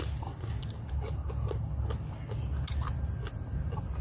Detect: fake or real real